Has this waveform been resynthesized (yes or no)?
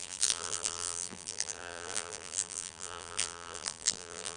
yes